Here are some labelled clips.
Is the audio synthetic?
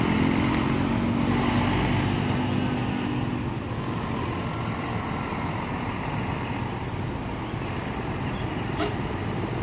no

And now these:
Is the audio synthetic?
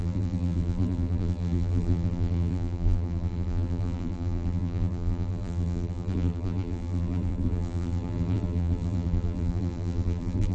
yes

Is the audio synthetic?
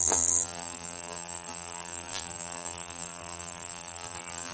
yes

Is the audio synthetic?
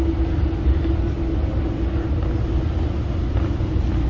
no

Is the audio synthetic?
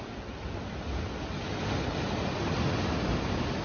no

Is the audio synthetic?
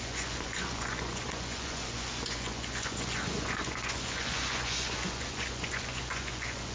yes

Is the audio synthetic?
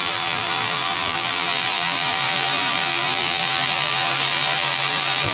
yes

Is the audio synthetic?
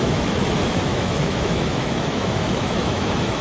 yes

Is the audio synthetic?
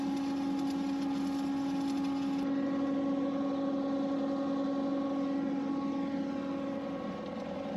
no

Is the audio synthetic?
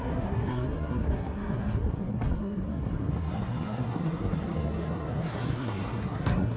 yes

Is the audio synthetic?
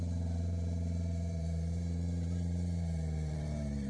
yes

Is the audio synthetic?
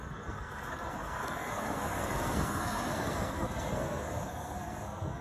yes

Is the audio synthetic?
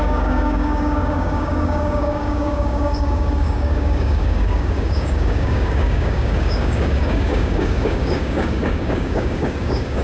yes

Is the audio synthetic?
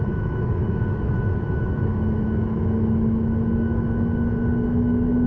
yes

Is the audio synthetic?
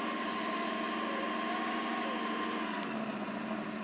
no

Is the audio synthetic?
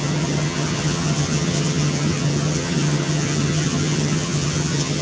yes